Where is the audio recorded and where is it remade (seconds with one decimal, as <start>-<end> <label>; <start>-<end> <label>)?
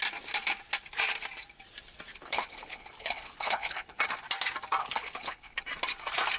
0.0-2.1 recorded; 2.1-4.0 remade; 4.0-4.8 recorded; 4.8-5.6 remade; 5.6-6.4 recorded